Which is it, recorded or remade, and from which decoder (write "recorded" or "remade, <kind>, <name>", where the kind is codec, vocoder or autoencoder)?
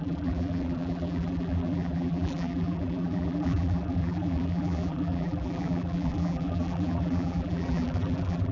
remade, vocoder, BigVGAN v2